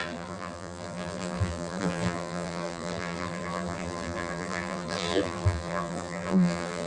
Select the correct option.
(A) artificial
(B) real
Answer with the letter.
A